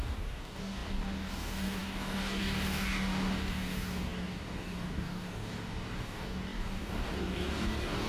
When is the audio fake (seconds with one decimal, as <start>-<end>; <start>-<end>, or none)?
0.0-8.1